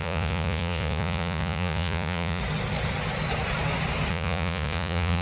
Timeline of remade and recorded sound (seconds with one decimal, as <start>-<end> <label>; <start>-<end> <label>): 0.0-2.4 remade; 2.4-4.1 recorded; 4.1-5.2 remade

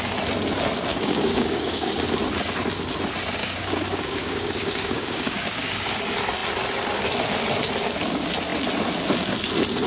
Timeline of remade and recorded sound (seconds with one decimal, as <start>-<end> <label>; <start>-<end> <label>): 0.0-0.9 recorded; 0.9-2.0 remade; 2.0-3.4 recorded; 3.4-6.0 remade; 6.0-9.9 recorded

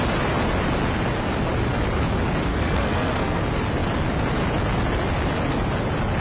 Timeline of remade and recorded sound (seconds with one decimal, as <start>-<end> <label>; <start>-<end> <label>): 0.0-2.5 recorded; 2.5-3.4 remade; 3.4-6.2 recorded

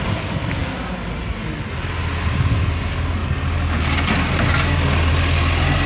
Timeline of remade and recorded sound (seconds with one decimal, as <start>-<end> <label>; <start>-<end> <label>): 0.0-5.9 recorded

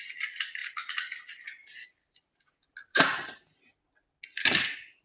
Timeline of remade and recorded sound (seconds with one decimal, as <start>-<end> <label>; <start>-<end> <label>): 0.0-2.9 recorded; 2.9-3.6 remade; 3.6-5.0 recorded

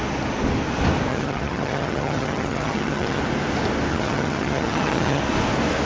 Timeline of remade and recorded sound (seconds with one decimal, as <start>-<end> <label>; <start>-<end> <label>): 0.0-1.1 recorded; 1.1-3.2 remade; 3.2-3.9 recorded; 3.9-5.2 remade; 5.2-5.9 recorded